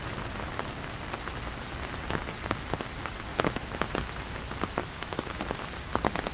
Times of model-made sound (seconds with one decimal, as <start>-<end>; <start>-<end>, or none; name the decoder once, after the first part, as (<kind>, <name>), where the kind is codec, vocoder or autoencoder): 3.3-3.9 (autoencoder, DAC-VAE); 4.8-5.4